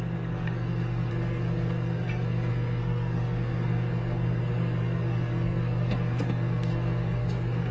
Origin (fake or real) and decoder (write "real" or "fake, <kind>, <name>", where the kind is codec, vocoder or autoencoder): fake, codec, SNAC